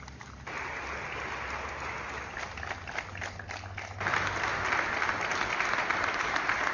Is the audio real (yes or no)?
yes